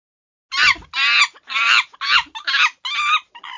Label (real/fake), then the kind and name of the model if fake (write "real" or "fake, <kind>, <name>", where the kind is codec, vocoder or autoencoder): real